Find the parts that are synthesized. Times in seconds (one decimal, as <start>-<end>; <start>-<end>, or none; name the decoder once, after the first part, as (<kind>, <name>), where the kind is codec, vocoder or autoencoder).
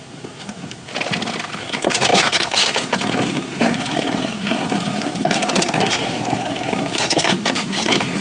0.0-0.9 (codec, SNAC); 1.6-8.2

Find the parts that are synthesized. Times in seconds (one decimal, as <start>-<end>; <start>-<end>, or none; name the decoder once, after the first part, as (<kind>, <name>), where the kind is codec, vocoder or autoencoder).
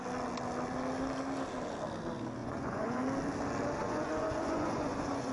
2.4-3.0 (vocoder, Vocos); 3.8-5.3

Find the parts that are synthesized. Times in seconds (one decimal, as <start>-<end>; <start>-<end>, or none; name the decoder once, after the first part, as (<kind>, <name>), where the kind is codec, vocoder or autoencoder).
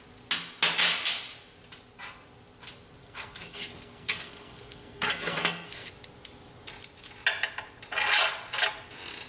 3.0-5.9 (codec, SNAC)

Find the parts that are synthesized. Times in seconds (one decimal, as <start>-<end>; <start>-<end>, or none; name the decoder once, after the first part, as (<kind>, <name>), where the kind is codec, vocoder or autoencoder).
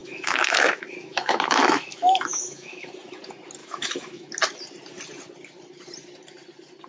0.0-2.9 (autoencoder, DAC-VAE); 3.6-4.3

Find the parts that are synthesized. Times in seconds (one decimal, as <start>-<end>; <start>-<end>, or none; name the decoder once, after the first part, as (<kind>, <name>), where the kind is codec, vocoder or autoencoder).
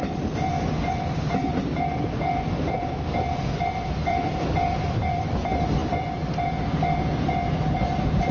4.1-5.3 (vocoder, BigVGAN v2)